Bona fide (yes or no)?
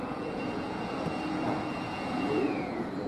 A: no